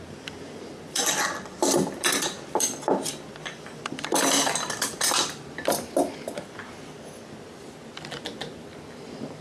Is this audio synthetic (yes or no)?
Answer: yes